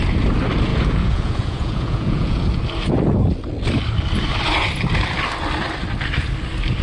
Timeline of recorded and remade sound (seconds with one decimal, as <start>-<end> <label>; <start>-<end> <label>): 0.0-0.7 recorded; 0.7-2.6 remade; 2.6-6.8 recorded